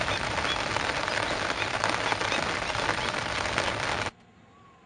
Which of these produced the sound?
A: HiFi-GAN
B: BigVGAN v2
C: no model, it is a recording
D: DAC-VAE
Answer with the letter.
C